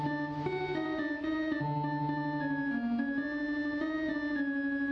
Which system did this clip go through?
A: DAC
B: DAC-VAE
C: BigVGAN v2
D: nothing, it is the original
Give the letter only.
D